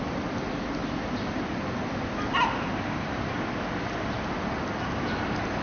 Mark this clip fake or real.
real